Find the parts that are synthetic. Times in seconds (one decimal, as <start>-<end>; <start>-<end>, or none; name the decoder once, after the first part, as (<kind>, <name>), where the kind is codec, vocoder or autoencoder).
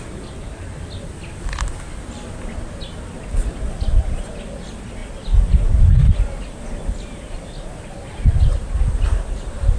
none